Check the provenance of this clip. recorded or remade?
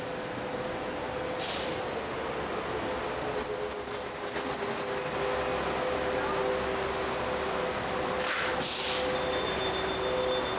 recorded